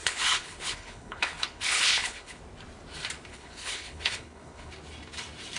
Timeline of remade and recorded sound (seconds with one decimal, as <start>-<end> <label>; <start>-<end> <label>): 0.0-2.4 remade; 2.4-3.3 recorded; 3.3-4.7 remade; 4.7-5.6 recorded